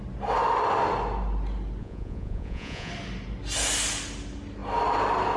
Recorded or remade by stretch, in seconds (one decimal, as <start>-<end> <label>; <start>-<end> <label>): 0.0-1.8 recorded; 1.8-2.9 remade; 2.9-5.4 recorded